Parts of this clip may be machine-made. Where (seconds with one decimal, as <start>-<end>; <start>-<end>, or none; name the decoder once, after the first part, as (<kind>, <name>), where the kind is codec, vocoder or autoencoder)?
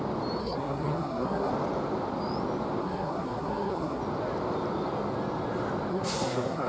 0.4-1.5 (codec, SNAC); 2.8-4.0; 5.9-6.7